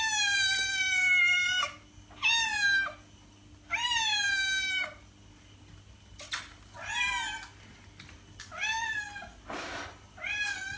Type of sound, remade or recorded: recorded